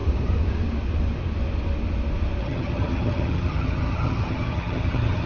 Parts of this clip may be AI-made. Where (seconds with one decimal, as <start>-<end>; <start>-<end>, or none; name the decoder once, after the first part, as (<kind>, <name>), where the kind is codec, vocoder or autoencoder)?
2.4-5.3 (vocoder, HiFi-GAN)